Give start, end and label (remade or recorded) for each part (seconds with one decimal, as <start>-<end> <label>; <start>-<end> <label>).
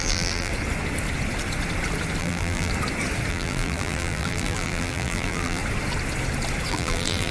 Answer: 0.0-0.5 remade; 0.5-2.2 recorded; 2.2-2.7 remade; 2.7-3.3 recorded; 3.3-5.6 remade; 5.6-6.7 recorded; 6.7-7.3 remade